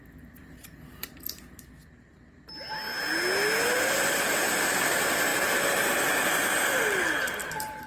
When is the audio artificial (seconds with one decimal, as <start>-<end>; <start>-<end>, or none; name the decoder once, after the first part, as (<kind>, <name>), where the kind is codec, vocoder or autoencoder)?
none